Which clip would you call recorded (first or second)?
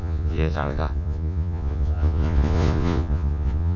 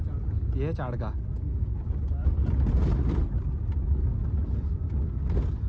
second